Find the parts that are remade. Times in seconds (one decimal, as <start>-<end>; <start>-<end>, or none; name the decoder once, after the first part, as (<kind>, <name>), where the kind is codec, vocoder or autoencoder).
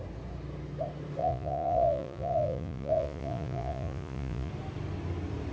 1.2-4.5 (vocoder, Vocos)